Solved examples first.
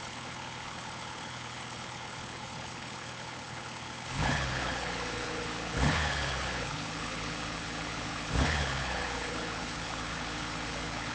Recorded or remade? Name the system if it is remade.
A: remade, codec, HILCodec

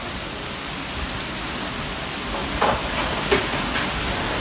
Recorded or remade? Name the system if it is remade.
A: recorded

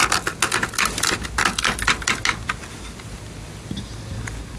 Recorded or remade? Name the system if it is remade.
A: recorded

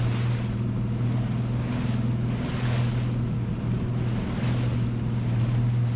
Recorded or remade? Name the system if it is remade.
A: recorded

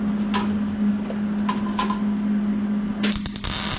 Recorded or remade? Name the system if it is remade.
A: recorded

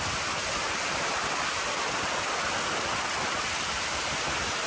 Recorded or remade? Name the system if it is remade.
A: recorded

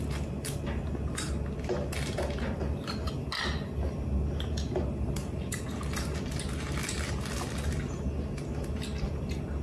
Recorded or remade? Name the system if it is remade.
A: recorded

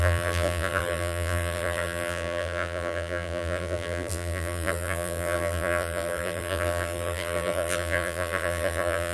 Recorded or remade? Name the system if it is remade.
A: remade, vocoder, BigVGAN v2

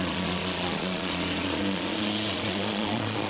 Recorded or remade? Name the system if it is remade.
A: remade, vocoder, Vocos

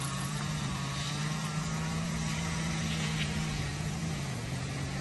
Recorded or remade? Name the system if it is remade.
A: remade, vocoder, Vocos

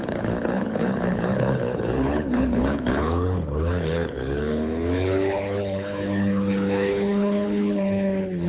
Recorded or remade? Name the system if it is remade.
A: remade, codec, HILCodec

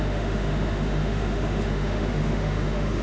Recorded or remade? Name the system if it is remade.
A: remade, autoencoder, DAC-VAE